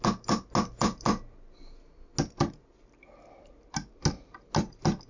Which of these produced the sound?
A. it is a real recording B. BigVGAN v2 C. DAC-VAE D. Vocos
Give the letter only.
A